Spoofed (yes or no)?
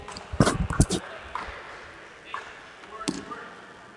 no